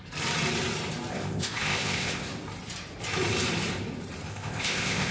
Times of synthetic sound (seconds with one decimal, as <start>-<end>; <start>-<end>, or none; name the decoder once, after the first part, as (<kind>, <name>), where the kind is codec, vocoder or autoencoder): 1.1-2.3 (codec, ZipCodec); 4.3-5.1